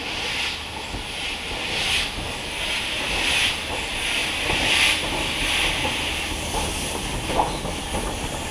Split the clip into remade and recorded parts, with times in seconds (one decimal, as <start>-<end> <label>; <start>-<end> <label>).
0.0-8.5 recorded